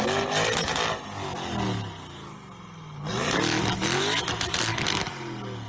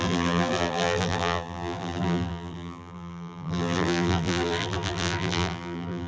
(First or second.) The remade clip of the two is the second